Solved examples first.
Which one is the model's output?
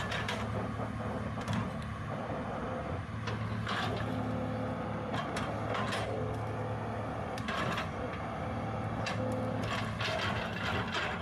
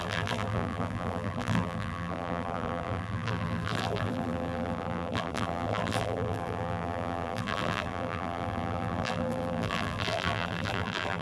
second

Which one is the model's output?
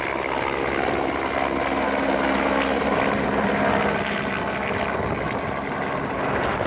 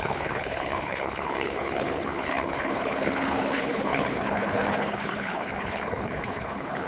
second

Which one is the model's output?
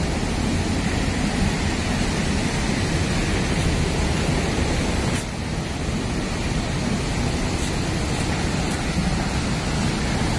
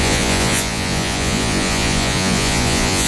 second